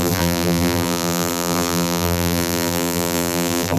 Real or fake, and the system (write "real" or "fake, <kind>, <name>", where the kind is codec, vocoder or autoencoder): fake, vocoder, BigVGAN v2